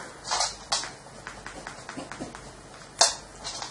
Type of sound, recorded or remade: recorded